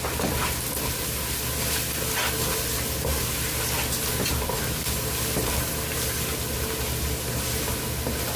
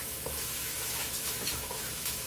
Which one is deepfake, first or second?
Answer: second